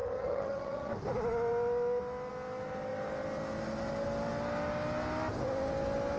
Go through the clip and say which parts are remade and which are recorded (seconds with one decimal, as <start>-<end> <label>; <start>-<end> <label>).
0.0-0.9 remade; 0.9-6.2 recorded